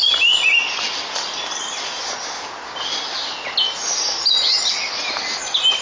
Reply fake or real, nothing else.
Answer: real